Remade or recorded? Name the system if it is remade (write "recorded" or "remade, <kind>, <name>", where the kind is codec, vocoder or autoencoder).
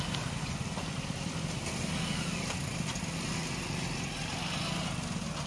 recorded